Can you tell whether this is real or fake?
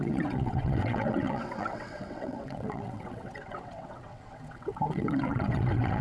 fake